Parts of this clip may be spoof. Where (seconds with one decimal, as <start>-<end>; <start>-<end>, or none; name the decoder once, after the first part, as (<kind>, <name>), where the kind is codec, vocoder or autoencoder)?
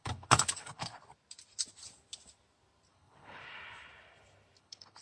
0.0-1.0 (codec, HILCodec); 2.9-3.4; 4.6-5.0